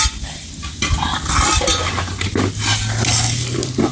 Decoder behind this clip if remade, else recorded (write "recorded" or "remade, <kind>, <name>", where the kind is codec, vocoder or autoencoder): recorded